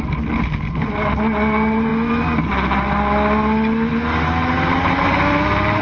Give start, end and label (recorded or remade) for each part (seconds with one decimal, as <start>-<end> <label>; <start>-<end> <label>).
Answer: 0.0-5.8 recorded